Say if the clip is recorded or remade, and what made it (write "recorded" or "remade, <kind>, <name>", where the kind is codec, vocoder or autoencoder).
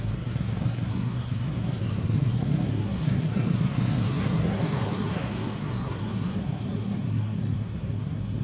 remade, codec, SNAC